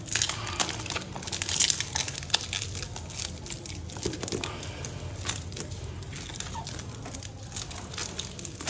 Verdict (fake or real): real